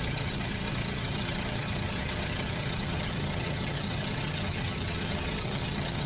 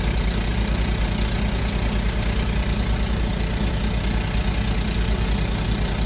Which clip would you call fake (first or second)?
first